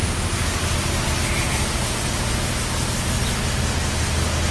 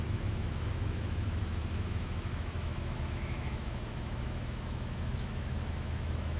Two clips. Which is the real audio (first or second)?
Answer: first